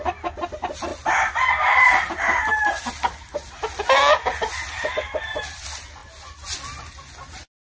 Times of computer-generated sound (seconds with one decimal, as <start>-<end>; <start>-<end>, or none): none